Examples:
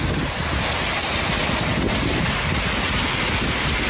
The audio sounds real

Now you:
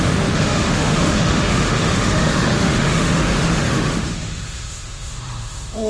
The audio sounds fake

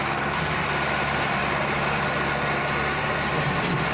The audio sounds real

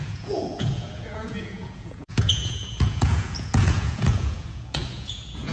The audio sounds fake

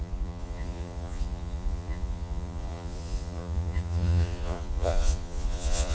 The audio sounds fake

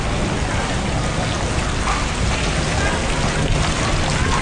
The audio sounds real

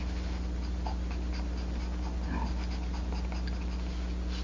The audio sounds real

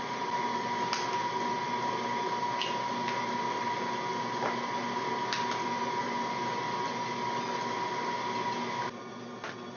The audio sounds real